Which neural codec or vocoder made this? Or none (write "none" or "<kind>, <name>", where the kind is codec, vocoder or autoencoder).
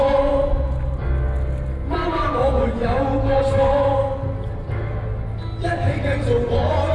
none